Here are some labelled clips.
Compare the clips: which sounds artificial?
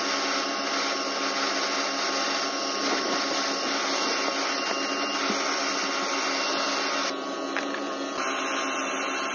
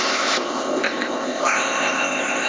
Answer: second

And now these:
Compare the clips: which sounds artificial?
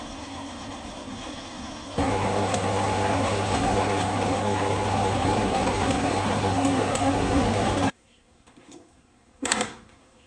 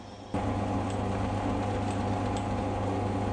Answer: first